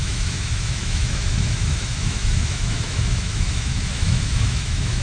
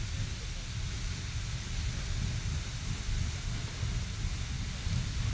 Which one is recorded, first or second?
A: second